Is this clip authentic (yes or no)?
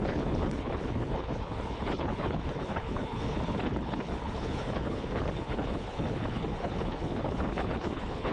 no